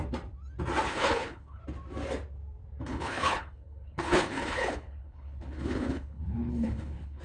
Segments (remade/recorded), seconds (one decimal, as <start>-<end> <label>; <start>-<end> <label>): 0.0-0.9 recorded; 0.9-1.6 remade; 1.6-2.9 recorded; 2.9-7.2 remade